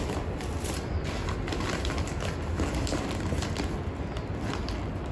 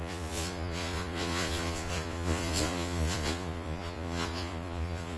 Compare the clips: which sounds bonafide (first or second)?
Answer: first